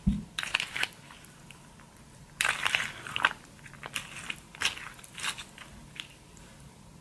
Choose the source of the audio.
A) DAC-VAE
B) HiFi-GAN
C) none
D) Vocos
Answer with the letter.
C